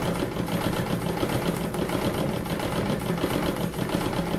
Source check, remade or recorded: recorded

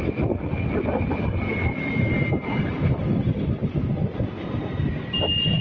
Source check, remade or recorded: recorded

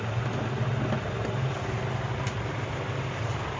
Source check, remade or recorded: recorded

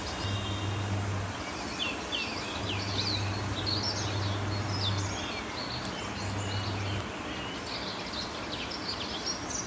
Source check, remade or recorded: recorded